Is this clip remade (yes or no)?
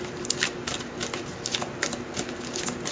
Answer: no